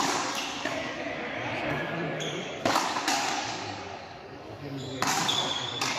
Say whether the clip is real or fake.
fake